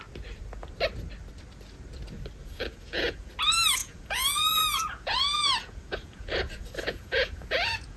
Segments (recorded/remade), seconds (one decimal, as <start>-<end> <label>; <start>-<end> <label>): 0.0-2.4 recorded; 2.4-3.3 remade; 3.3-3.8 recorded; 3.8-8.0 remade